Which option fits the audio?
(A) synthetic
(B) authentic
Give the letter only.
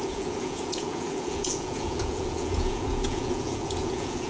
A